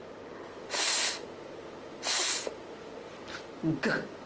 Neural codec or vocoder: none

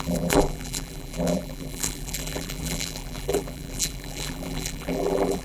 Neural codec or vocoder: vocoder, BigVGAN v2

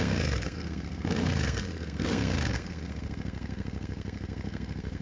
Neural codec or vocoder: codec, SNAC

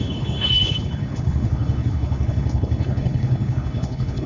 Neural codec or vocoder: codec, HILCodec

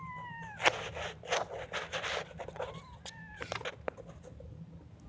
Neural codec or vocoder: none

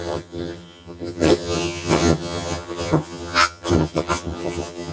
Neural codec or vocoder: vocoder, HiFi-GAN